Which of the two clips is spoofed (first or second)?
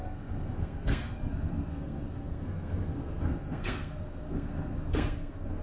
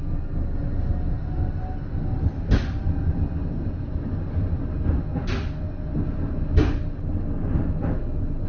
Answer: first